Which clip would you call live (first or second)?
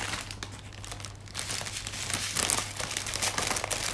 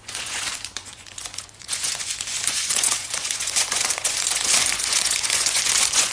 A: first